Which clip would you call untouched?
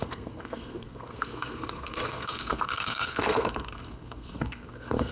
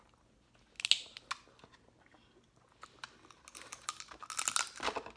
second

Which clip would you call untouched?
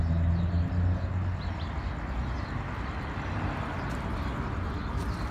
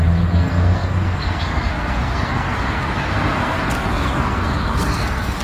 first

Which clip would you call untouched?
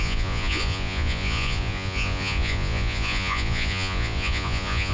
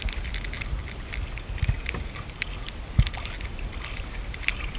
second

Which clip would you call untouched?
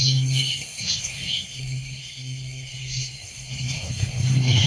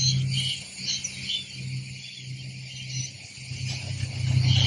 second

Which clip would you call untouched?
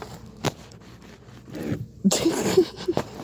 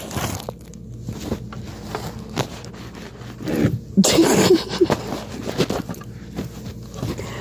second